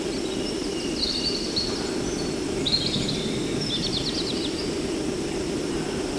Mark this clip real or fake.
real